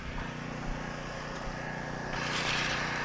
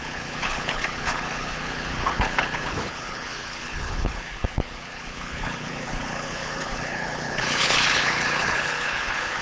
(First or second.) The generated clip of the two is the second